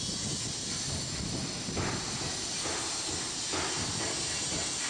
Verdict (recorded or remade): recorded